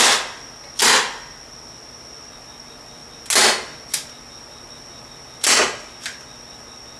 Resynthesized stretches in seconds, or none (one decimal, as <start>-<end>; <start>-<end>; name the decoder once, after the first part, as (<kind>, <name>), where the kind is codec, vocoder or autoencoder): none